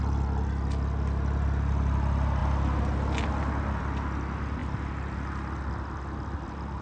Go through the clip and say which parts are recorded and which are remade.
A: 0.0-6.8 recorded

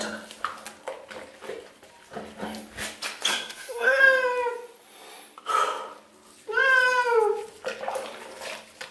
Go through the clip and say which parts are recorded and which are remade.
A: 0.0-3.3 recorded; 3.3-4.0 remade; 4.0-8.9 recorded

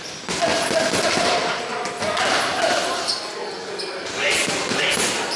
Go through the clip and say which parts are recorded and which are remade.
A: 0.0-5.4 recorded